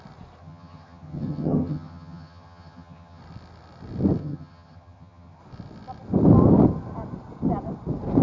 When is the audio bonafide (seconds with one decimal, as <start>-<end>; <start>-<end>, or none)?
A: 0.0-0.4; 3.2-4.2; 5.4-8.2